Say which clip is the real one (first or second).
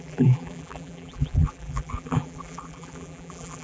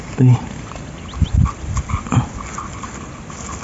second